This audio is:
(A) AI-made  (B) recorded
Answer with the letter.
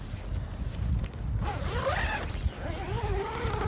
B